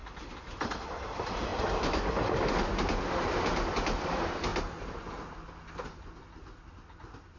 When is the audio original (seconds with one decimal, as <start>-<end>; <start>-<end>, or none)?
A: 0.0-7.4

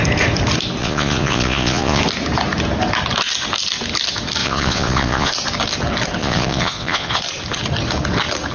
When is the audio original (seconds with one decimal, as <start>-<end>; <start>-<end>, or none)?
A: 0.0-0.8; 2.0-4.4; 5.3-6.2; 7.2-8.5

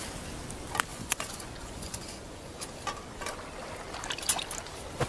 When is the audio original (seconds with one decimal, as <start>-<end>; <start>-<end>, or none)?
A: 0.0-0.9; 2.5-5.1

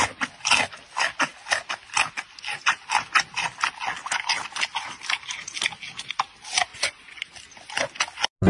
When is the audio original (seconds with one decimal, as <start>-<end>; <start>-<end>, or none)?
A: 0.0-6.7; 7.2-8.5

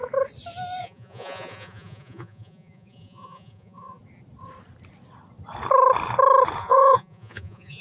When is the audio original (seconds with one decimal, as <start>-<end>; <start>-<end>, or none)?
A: 0.0-0.8; 4.0-6.6